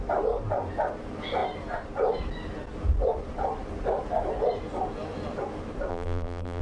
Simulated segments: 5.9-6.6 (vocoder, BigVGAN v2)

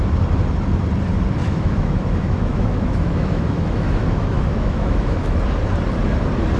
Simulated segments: 1.4-5.4 (autoencoder, DAC-VAE)

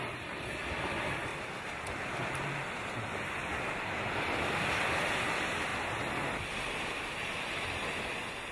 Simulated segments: none

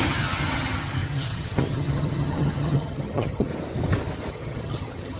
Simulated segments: 0.0-3.5 (vocoder, HiFi-GAN); 4.3-5.2

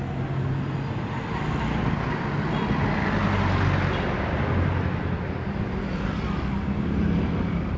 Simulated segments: none

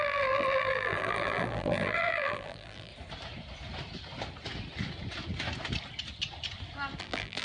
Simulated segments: 0.0-2.9 (vocoder, BigVGAN v2); 7.0-7.4

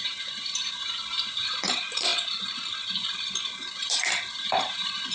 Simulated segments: 0.0-2.1 (vocoder, BigVGAN v2); 3.8-5.1

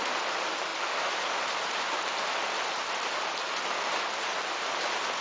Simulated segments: none